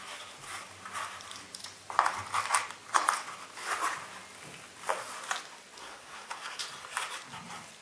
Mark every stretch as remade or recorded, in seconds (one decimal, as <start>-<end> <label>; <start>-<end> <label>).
0.0-5.8 recorded; 5.8-6.6 remade; 6.6-7.8 recorded